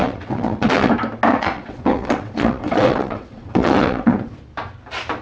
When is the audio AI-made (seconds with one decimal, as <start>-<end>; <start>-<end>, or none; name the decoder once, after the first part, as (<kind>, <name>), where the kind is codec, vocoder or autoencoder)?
0.0-0.9 (vocoder, WaveNeXt); 1.3-4.3